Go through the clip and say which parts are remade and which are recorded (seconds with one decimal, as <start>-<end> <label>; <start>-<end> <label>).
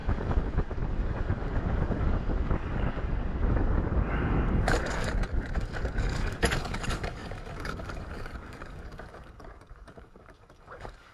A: 0.0-11.1 remade